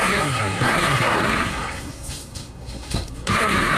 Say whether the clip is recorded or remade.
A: remade